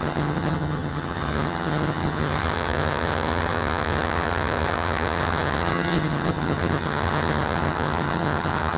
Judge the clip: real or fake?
fake